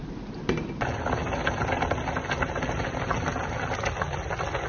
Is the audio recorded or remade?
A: recorded